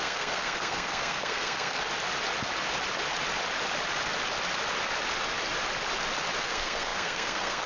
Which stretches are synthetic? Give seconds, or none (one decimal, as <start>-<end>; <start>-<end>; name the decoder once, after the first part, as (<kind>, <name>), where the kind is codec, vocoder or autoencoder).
0.0-1.8 (codec, SNAC); 6.4-7.7